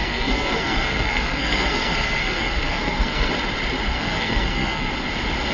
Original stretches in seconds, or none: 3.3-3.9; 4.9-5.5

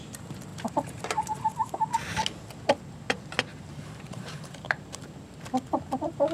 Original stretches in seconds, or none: 0.0-0.5; 1.9-3.5; 5.0-6.3

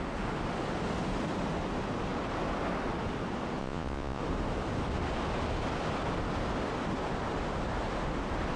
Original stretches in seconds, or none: 0.0-3.6; 4.2-8.6

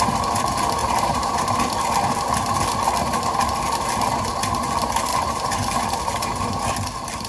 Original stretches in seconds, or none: 0.0-0.8; 1.8-5.1; 5.6-7.3

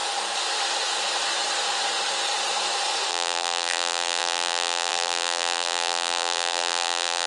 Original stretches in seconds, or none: 0.0-3.1

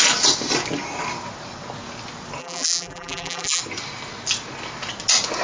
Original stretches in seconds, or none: 0.0-2.4; 3.6-5.4

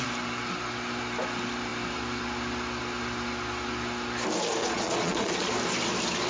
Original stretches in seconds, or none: 0.0-4.6; 5.5-6.3

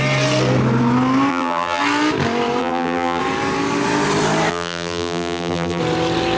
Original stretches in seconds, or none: 0.0-1.3; 1.8-2.6; 3.2-4.5; 5.8-6.4